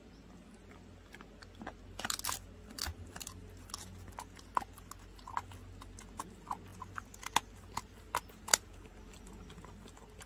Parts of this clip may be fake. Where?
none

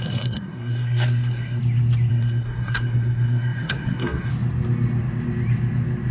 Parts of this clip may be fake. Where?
0.0-1.6 (codec, SNAC); 2.1-4.3

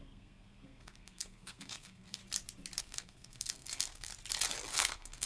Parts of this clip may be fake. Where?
0.0-2.2 (codec, SNAC); 2.8-4.1; 4.7-5.3

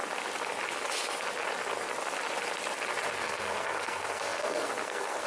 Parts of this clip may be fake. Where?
3.2-5.3 (codec, SNAC)

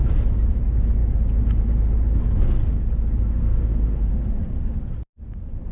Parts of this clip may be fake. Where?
3.4-4.1 (codec, SNAC)

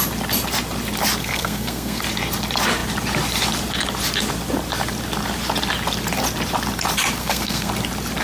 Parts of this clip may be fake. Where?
1.2-2.0 (codec, SNAC); 7.2-7.7

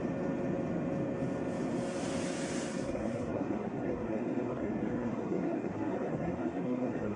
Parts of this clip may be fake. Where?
2.7-7.2 (codec, SNAC)